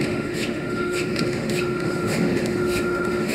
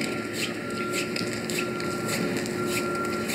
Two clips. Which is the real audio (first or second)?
second